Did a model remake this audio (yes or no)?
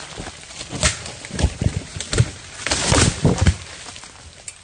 no